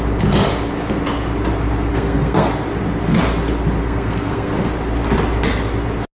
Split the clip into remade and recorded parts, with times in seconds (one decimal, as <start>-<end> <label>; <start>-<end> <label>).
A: 0.0-1.9 recorded; 1.9-2.5 remade; 2.5-3.8 recorded; 3.8-4.7 remade; 4.7-6.2 recorded